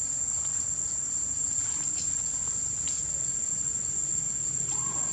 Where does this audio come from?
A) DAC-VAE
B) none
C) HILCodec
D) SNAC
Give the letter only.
B